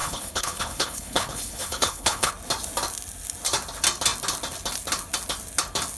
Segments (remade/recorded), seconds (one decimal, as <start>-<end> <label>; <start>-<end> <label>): 0.0-2.3 remade; 2.3-6.0 recorded